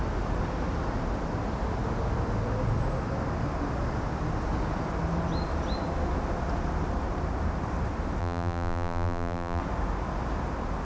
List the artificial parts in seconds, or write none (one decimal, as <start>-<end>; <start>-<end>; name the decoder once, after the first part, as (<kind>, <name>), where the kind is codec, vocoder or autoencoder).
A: 8.2-9.6 (vocoder, BigVGAN v2)